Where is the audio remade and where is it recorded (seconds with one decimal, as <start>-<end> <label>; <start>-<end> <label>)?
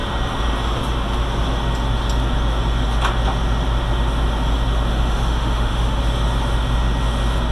0.0-4.9 recorded; 4.9-6.0 remade; 6.0-7.5 recorded